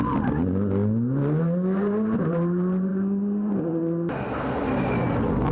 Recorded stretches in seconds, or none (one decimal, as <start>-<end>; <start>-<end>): 0.0-5.5